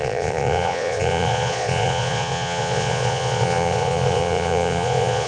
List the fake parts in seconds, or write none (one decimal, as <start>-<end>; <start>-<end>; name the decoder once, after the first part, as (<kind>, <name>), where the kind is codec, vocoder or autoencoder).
0.0-5.3 (vocoder, Vocos)

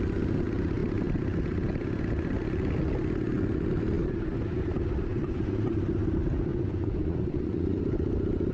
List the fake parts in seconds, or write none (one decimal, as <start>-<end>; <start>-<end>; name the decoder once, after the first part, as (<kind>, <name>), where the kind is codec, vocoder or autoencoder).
5.2-5.8 (vocoder, Vocos); 6.5-7.8

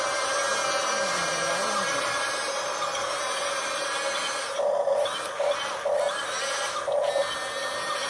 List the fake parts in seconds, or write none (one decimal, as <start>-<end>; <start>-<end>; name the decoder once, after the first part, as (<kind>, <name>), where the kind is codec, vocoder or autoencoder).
none

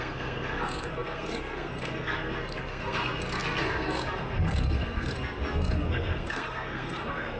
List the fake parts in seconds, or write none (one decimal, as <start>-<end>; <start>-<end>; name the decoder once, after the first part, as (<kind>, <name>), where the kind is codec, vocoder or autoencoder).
0.0-7.4 (codec, SNAC)

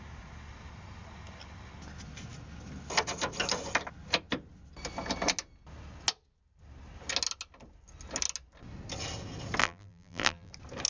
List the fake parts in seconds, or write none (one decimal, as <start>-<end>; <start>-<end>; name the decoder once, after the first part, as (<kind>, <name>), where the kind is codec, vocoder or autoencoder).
9.6-10.5 (vocoder, BigVGAN v2)